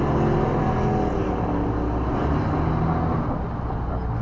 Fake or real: real